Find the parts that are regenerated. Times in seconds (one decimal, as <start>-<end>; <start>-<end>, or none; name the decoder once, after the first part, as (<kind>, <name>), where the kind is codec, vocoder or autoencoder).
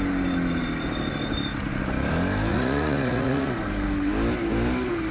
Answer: 2.5-3.5 (vocoder, Vocos)